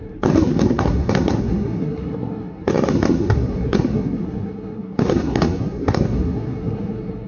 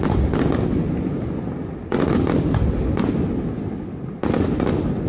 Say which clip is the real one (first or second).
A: second